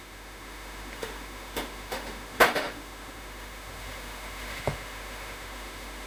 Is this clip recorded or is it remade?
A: remade